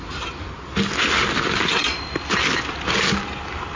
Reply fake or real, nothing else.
real